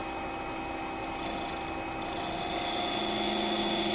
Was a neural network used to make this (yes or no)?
no